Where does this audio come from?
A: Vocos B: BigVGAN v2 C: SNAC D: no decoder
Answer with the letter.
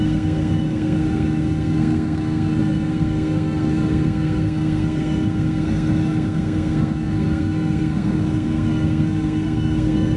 C